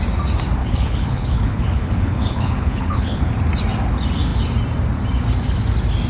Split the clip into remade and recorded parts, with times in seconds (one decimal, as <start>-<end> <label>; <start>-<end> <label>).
0.0-0.6 recorded; 0.6-3.2 remade; 3.2-6.1 recorded